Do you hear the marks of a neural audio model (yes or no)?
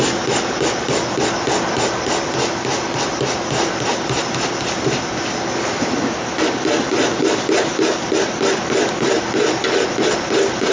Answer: no